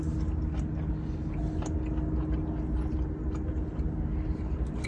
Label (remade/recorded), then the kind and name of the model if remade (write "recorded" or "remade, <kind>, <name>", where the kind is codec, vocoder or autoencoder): recorded